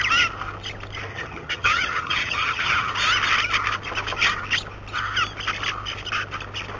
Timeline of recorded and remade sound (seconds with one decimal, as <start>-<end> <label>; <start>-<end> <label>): 0.0-1.1 recorded; 1.1-2.9 remade; 2.9-6.8 recorded